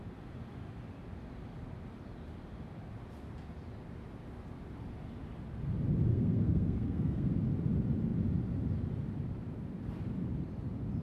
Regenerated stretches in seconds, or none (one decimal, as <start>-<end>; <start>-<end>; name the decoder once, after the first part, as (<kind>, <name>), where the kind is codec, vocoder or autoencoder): 6.1-7.3 (codec, SNAC)